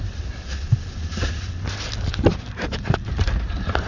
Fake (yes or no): yes